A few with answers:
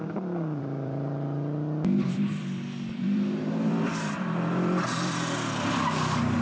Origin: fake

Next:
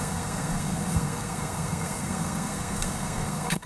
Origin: fake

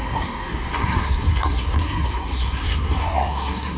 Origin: fake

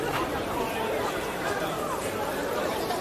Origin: fake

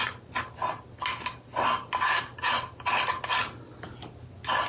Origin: real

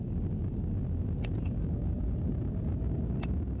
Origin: real